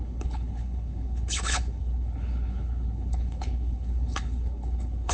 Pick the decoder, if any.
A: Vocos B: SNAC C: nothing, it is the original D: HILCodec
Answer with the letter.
D